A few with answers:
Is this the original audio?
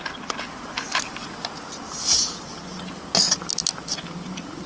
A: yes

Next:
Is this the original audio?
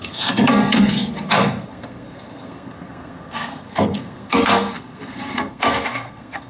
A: no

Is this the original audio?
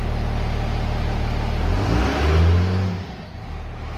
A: yes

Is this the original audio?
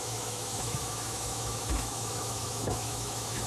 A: no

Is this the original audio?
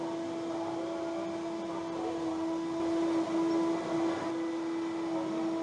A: yes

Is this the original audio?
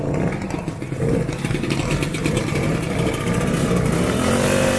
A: yes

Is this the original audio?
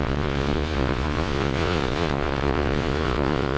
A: no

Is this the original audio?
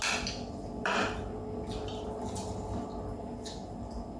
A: yes